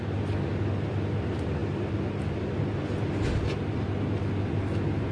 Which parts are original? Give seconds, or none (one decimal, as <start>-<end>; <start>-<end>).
0.0-5.1